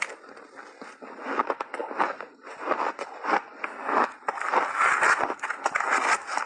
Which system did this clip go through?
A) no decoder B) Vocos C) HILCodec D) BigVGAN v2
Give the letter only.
A